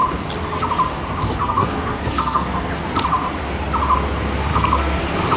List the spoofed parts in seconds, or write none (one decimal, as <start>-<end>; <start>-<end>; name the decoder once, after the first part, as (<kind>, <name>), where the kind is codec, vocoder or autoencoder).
1.4-2.7 (codec, SNAC); 4.5-5.0